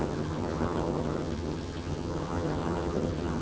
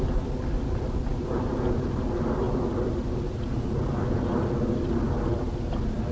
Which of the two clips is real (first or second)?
second